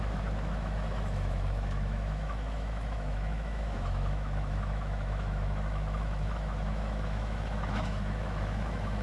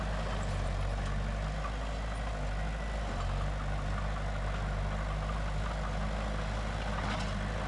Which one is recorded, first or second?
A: second